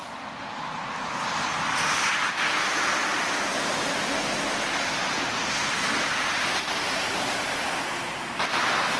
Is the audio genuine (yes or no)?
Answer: yes